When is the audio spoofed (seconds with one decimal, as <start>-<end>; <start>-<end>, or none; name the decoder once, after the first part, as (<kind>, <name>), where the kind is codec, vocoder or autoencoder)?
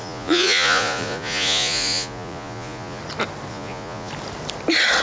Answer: 0.0-3.0 (vocoder, Vocos); 3.5-4.1